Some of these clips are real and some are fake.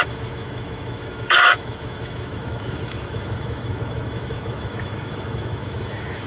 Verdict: fake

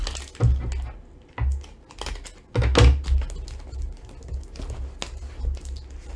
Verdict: real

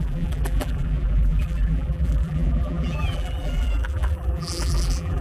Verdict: fake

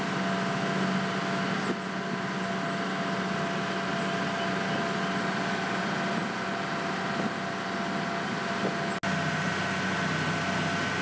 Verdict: real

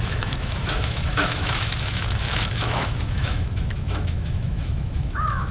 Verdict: fake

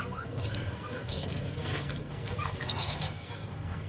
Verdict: fake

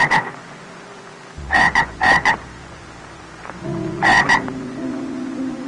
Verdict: fake